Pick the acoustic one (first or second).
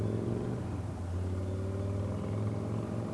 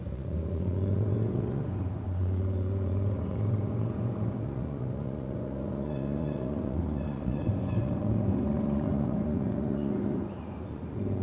first